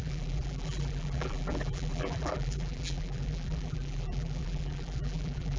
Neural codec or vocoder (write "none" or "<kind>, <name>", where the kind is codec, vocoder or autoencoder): vocoder, BigVGAN v2